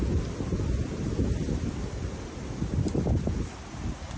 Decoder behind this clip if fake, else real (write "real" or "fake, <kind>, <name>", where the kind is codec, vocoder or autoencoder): real